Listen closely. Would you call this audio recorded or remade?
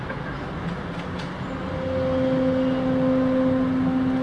recorded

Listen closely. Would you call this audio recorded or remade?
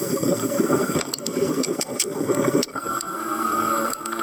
remade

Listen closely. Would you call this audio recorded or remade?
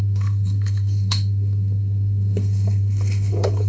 remade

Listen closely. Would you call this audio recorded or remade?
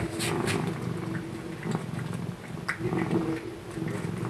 recorded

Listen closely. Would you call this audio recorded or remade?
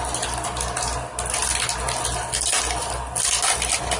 recorded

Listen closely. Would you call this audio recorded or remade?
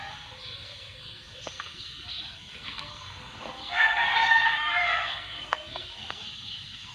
remade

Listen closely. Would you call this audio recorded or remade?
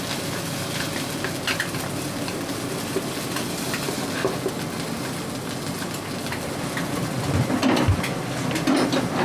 recorded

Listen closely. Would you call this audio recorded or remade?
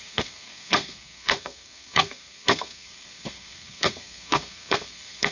remade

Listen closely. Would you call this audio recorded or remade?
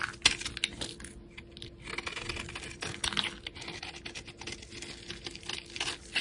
recorded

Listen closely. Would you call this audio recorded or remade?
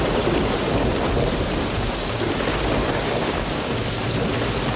recorded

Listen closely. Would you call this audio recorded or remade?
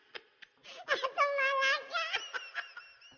recorded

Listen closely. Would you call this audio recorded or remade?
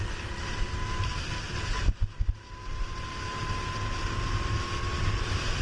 recorded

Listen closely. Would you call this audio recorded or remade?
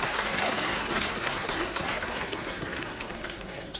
remade